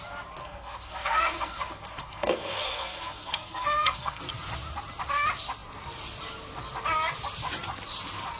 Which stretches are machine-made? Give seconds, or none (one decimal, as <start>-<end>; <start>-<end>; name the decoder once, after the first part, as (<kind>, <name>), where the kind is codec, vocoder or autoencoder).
0.4-4.2 (codec, SNAC)